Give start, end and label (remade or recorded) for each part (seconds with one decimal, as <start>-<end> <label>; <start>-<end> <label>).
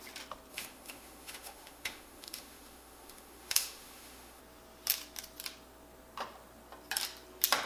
0.0-0.5 recorded; 0.5-4.4 remade; 4.4-7.7 recorded